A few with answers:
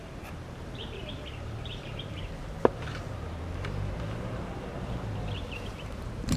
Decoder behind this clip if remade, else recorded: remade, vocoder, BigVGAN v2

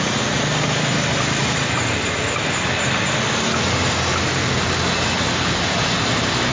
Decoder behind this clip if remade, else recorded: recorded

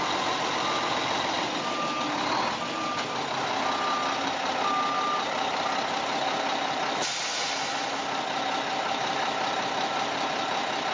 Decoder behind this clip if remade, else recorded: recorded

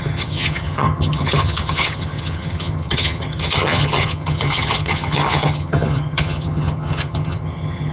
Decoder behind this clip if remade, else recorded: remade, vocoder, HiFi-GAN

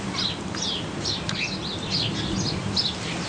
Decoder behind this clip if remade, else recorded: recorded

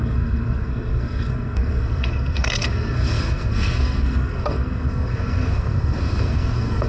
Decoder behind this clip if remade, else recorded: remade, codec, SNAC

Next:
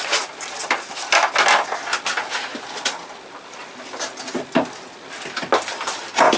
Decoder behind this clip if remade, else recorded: recorded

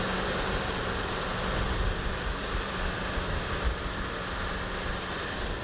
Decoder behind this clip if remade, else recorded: remade, vocoder, BigVGAN v2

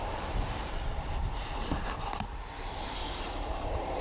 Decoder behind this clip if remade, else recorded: remade, vocoder, BigVGAN v2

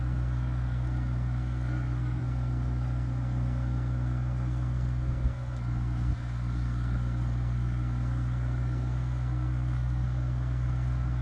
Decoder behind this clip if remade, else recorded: remade, codec, SNAC